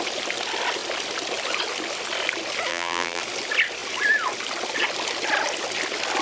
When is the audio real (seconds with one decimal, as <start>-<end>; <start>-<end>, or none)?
0.0-2.7; 3.2-6.2

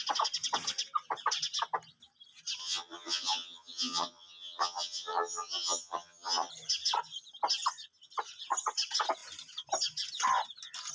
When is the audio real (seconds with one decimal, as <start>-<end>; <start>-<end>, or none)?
0.0-2.6; 6.5-10.9